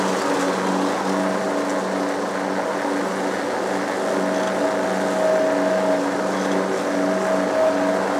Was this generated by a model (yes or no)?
no